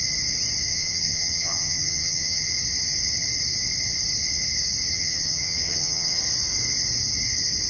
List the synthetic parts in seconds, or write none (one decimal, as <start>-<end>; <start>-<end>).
0.7-2.5; 4.9-6.2